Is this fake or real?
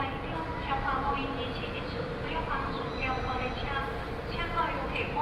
real